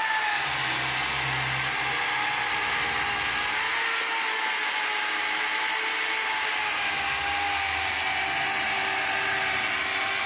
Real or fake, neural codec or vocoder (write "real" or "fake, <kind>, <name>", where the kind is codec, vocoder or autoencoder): real